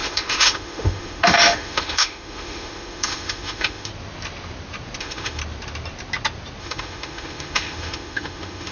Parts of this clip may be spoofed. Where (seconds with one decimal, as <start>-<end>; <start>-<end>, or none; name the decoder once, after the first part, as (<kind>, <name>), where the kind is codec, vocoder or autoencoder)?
0.0-3.9 (autoencoder, DAC-VAE); 5.0-5.4; 6.6-8.7